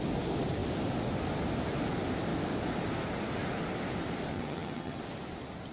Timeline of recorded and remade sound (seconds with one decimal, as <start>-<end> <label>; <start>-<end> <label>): 0.0-4.3 recorded; 4.3-5.0 remade; 5.0-5.7 recorded